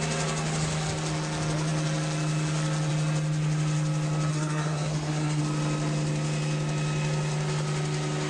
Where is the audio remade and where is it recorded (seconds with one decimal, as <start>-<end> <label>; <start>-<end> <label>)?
0.0-4.3 recorded; 4.3-5.4 remade; 5.4-8.3 recorded